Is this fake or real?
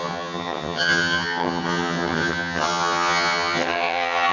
fake